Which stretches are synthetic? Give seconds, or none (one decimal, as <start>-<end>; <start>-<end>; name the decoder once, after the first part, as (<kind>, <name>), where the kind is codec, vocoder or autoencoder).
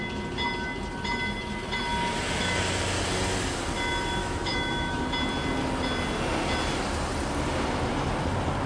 4.2-5.0 (autoencoder, DAC-VAE)